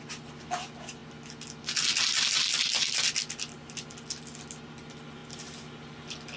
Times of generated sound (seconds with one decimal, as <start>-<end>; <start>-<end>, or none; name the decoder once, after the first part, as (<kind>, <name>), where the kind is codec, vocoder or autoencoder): none